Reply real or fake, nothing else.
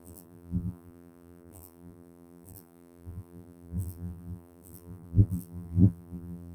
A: fake